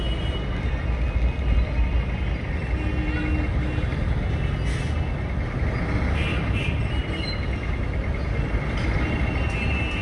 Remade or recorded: recorded